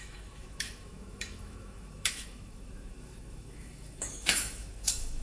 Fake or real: fake